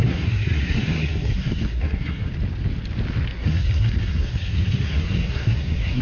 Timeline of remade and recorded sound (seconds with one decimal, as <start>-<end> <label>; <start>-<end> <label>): 0.0-2.3 remade; 2.3-3.3 recorded; 3.3-6.0 remade